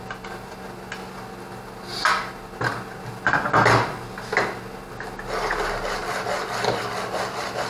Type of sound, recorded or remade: recorded